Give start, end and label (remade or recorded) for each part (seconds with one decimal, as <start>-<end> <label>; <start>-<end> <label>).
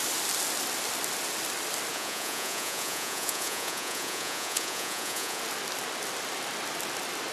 0.0-1.9 recorded; 1.9-5.4 remade; 5.4-7.3 recorded